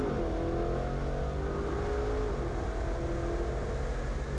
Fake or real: real